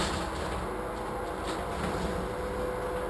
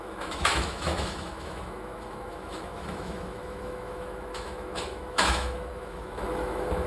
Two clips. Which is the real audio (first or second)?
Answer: first